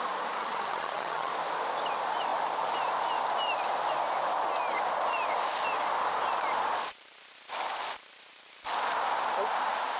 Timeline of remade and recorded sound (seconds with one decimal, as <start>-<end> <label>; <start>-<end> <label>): 0.0-0.4 recorded; 0.4-1.3 remade; 1.3-10.0 recorded